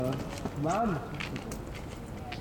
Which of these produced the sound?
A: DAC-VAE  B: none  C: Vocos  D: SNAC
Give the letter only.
B